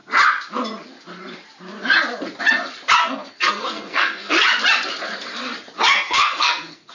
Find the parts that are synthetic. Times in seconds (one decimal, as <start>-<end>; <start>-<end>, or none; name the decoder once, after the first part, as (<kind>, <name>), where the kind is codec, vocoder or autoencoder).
3.0-4.3 (codec, SNAC); 5.9-6.9